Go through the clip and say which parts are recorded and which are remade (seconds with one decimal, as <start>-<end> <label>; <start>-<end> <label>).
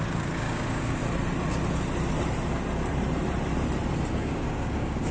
0.0-1.0 remade; 1.0-4.1 recorded; 4.1-5.1 remade